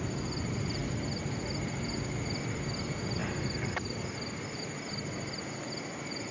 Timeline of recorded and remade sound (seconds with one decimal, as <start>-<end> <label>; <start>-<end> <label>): 0.0-6.3 recorded